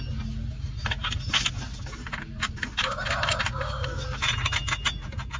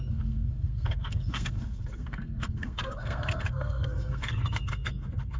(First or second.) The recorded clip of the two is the first